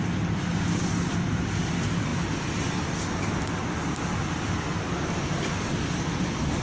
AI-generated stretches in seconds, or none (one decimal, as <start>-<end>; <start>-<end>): none